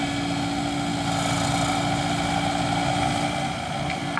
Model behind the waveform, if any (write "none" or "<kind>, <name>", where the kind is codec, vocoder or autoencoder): none